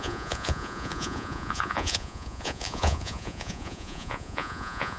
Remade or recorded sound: remade